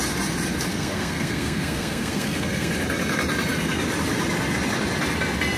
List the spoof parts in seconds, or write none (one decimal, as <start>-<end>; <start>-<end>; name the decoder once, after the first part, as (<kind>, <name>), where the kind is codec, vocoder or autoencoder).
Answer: 0.7-2.7 (codec, SNAC)